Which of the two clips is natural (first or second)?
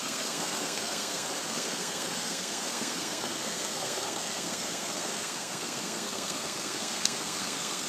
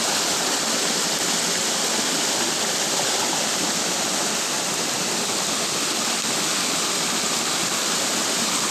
second